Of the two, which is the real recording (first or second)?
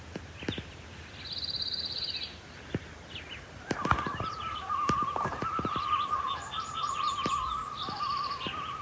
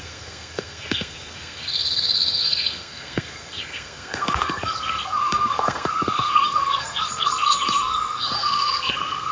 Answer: first